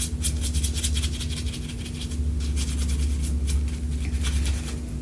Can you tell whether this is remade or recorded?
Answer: recorded